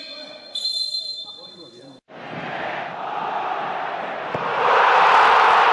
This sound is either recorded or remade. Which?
recorded